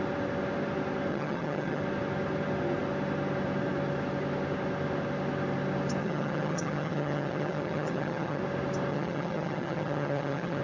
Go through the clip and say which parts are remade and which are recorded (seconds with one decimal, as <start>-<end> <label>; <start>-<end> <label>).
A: 0.0-1.1 recorded; 1.1-1.8 remade; 1.8-6.0 recorded; 6.0-8.4 remade; 8.4-8.9 recorded; 8.9-10.6 remade